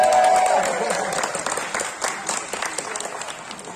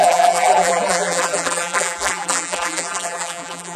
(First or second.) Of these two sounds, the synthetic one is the second